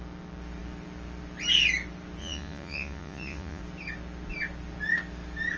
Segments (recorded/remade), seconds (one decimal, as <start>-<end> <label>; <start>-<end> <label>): 0.0-2.2 recorded; 2.2-3.6 remade; 3.6-5.6 recorded